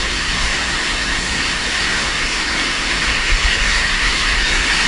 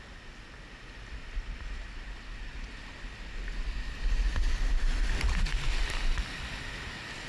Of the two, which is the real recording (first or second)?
second